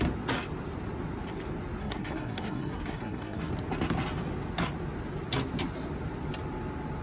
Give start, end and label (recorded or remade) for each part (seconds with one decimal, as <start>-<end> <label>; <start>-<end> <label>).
0.0-1.8 recorded; 1.8-3.5 remade; 3.5-7.0 recorded